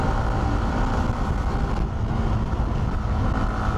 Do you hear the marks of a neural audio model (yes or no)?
no